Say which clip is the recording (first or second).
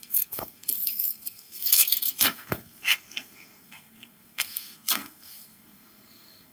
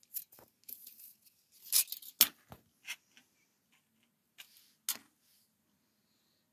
second